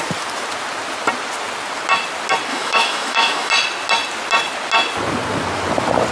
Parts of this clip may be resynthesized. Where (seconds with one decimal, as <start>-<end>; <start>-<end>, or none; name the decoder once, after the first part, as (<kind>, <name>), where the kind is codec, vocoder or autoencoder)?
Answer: 2.5-3.5 (autoencoder, DAC-VAE)